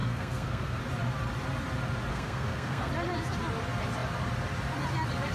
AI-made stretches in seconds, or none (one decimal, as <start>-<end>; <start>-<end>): 0.0-0.8; 2.1-2.9